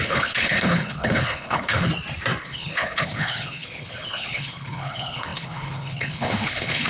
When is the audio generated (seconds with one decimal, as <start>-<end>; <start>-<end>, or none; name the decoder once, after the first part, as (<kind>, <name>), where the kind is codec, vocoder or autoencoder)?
0.0-1.9 (codec, HILCodec); 2.4-6.9